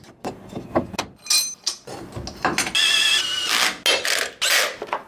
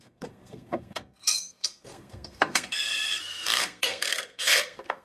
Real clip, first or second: first